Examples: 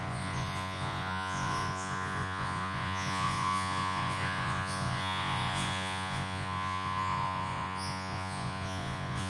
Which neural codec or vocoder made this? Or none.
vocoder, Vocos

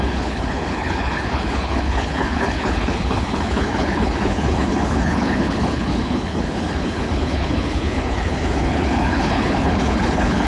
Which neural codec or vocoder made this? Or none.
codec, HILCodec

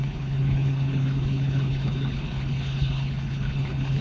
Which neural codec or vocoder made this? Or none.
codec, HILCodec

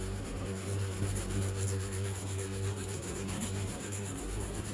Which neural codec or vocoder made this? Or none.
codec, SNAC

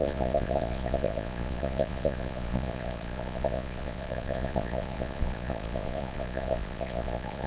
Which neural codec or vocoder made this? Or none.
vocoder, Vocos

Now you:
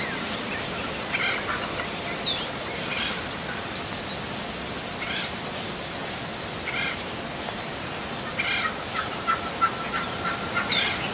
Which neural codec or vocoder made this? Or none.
none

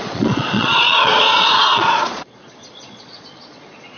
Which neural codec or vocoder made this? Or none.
vocoder, Vocos